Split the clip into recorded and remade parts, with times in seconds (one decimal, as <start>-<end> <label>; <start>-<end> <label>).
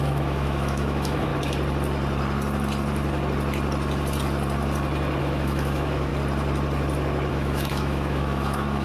0.0-1.3 remade; 1.3-5.2 recorded; 5.2-6.1 remade; 6.1-7.3 recorded; 7.3-8.8 remade